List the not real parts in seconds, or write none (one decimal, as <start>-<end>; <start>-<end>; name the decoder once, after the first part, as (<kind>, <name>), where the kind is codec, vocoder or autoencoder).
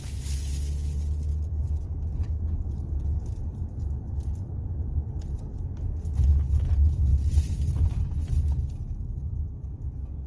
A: 1.3-5.6 (vocoder, BigVGAN v2); 7.1-8.2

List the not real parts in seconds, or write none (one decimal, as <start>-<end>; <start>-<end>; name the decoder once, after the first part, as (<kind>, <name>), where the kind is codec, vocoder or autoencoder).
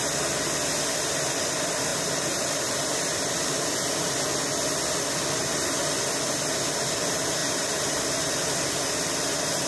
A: 1.9-4.1 (vocoder, BigVGAN v2); 7.4-8.0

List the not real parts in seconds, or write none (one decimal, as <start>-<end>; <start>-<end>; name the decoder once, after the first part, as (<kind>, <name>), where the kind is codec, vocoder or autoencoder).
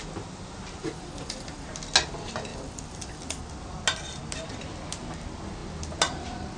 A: 0.8-1.7 (vocoder, BigVGAN v2); 2.5-3.4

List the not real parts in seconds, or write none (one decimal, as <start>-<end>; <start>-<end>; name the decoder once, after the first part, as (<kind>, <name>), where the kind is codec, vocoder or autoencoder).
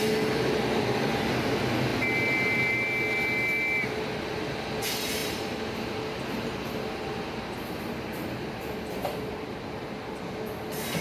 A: 5.2-9.7 (vocoder, BigVGAN v2)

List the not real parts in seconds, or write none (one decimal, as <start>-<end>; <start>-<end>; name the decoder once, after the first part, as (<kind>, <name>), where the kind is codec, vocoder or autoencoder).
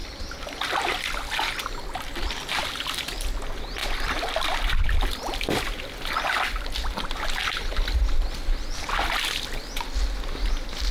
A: 7.4-8.8 (vocoder, BigVGAN v2)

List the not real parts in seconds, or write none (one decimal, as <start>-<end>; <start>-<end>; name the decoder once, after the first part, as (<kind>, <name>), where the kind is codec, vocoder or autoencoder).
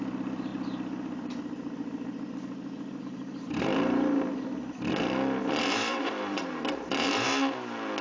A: 0.0-3.7 (vocoder, BigVGAN v2); 5.4-7.3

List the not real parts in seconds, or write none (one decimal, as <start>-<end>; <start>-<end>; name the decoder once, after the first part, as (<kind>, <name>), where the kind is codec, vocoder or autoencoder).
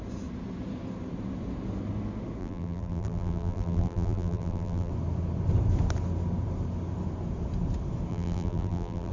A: 2.4-4.9 (vocoder, BigVGAN v2); 8.1-9.1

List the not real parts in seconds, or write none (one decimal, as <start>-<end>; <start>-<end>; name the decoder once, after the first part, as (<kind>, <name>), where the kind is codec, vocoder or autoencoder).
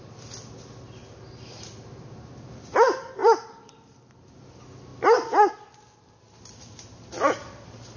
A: 3.2-4.0 (vocoder, BigVGAN v2); 4.9-5.5; 7.4-8.0